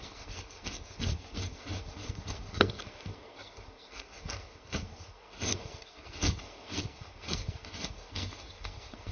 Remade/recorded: remade